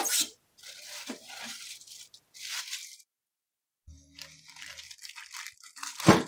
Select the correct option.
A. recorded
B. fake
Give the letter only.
B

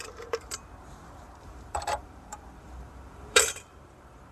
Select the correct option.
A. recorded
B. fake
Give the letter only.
B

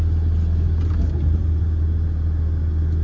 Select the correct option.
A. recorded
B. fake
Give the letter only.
A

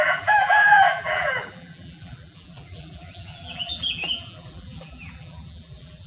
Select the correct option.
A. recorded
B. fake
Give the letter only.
B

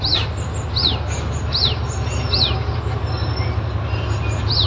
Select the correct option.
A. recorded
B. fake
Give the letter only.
A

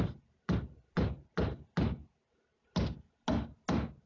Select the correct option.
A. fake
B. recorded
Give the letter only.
B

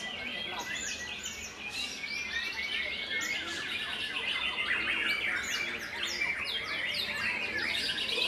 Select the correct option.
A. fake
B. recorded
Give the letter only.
B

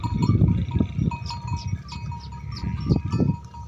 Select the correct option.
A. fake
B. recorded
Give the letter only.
B